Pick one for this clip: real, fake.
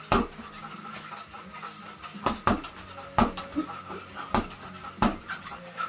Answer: real